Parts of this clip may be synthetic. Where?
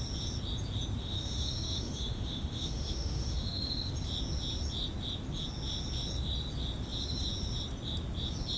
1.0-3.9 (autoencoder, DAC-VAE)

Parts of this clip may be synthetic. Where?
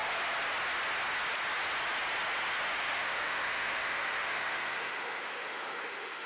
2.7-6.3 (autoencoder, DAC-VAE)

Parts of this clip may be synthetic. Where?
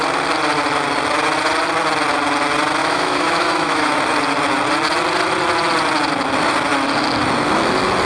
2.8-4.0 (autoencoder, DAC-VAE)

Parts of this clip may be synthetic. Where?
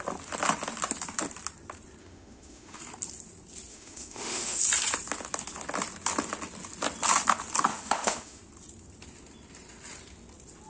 2.0-2.8 (autoencoder, DAC-VAE); 3.7-4.6; 7.7-8.4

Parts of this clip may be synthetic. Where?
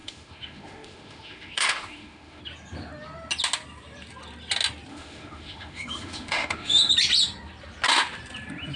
0.0-2.4 (autoencoder, DAC-VAE); 4.9-6.9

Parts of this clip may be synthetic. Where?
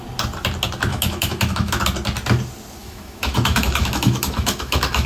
0.9-1.8 (autoencoder, DAC-VAE); 2.8-5.1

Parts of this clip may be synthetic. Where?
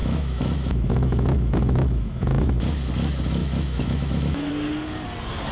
0.0-2.5 (autoencoder, DAC-VAE); 3.4-4.5